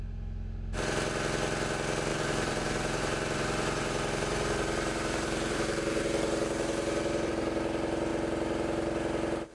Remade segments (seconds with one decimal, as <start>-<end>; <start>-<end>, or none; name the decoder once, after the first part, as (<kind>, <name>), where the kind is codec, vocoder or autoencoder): 2.1-7.3 (vocoder, BigVGAN v2)